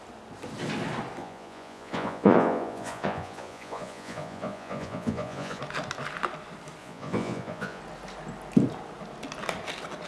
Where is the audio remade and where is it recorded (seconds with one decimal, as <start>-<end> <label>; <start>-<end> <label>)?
0.0-1.2 recorded; 1.2-5.6 remade; 5.6-6.8 recorded; 6.8-7.8 remade; 7.8-10.1 recorded